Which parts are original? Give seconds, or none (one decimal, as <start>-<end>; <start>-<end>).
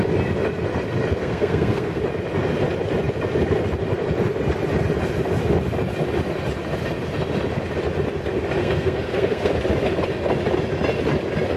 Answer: 0.0-1.2; 2.0-8.6; 9.5-11.6